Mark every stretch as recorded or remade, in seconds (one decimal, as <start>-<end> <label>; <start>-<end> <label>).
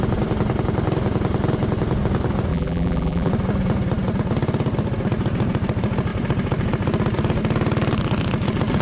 0.0-2.5 recorded; 2.5-3.3 remade; 3.3-8.8 recorded